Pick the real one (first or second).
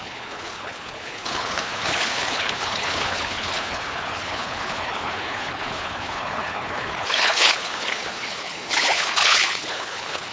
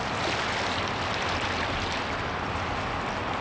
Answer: second